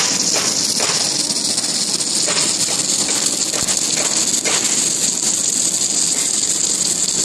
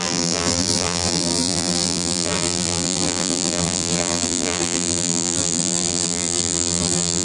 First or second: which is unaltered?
first